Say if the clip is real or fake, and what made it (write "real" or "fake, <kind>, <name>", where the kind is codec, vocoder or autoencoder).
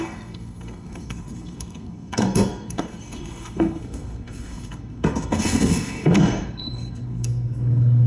fake, codec, SNAC